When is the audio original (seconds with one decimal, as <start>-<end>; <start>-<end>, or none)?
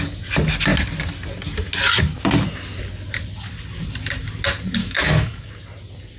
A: 0.0-4.8; 5.5-6.2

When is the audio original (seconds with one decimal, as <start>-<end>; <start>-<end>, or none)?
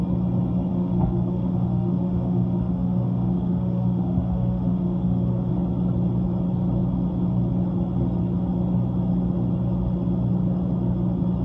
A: 0.0-0.7; 5.5-11.4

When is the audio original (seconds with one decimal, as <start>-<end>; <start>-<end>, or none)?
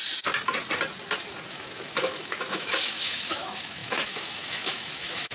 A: 0.0-1.5